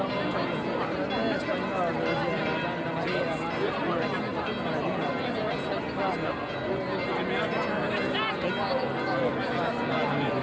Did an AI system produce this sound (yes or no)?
no